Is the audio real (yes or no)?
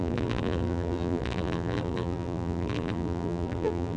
no